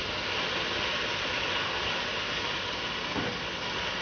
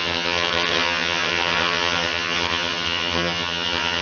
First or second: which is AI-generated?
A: second